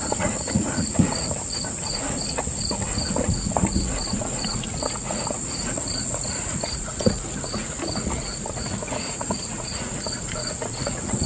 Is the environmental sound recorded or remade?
remade